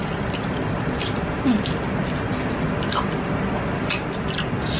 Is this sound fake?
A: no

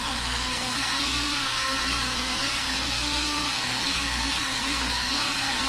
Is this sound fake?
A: yes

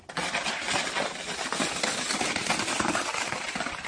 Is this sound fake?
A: no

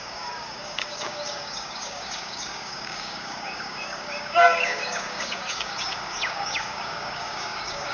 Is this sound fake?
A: yes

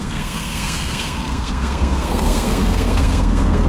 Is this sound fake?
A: yes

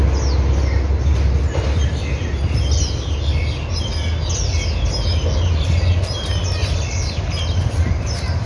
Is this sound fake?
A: no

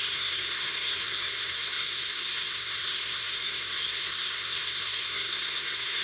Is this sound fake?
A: yes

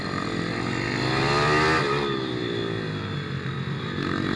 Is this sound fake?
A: no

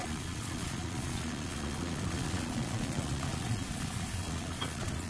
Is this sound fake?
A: yes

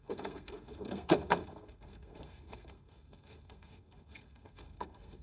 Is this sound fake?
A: yes